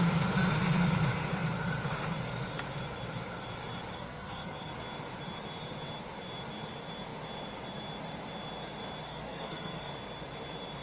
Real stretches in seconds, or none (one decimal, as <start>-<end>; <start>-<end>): 0.0-3.9; 4.7-9.1; 9.9-10.8